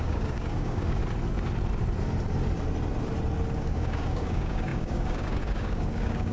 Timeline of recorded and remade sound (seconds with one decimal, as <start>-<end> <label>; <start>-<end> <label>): 0.0-1.0 remade; 1.0-3.6 recorded; 3.6-6.3 remade